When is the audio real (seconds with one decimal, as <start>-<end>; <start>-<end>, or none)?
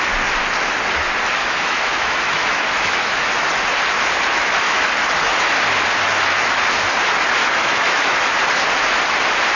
0.0-1.4; 3.3-4.3; 4.9-7.4; 8.2-9.6